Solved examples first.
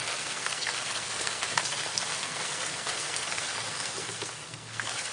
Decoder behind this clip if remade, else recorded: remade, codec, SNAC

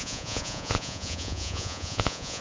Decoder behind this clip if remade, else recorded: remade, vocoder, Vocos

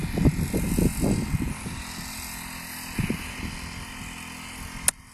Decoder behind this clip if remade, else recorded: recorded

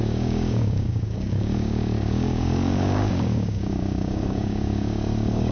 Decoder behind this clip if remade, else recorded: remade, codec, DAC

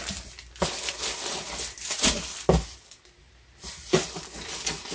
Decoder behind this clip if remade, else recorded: recorded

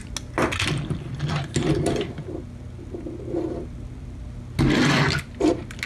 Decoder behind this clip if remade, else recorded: recorded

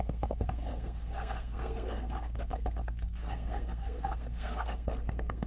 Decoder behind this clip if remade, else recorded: remade, codec, SNAC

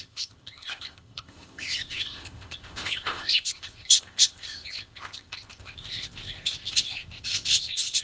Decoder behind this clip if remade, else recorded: remade, codec, ZipCodec